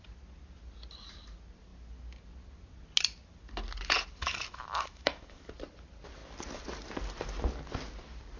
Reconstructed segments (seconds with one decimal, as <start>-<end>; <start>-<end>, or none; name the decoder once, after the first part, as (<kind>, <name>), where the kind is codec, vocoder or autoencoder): 4.2-5.5 (autoencoder, DAC-VAE)